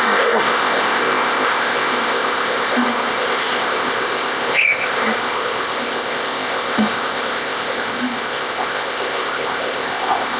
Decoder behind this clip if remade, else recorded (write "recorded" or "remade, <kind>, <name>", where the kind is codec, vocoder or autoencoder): remade, codec, ZipCodec